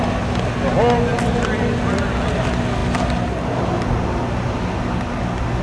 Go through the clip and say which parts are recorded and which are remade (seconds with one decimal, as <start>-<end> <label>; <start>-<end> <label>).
0.0-5.6 recorded